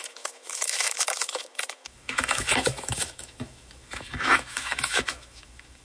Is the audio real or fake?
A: fake